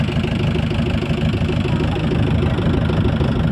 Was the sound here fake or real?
real